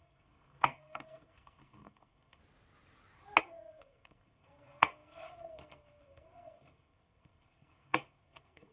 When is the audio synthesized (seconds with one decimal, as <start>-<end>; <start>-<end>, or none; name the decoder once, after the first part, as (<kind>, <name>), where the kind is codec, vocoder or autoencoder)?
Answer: 0.0-2.4 (codec, SNAC); 3.4-8.7